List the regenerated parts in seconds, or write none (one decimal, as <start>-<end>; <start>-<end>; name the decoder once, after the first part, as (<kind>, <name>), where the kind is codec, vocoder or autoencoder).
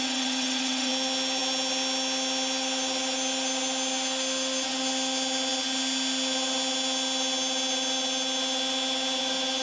0.0-0.9 (vocoder, WaveNeXt)